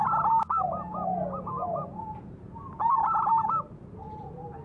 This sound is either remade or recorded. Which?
recorded